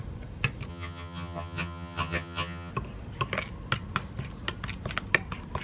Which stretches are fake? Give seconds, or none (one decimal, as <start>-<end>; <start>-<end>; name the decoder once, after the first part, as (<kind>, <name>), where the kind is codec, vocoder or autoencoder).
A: 0.7-2.7 (vocoder, HiFi-GAN)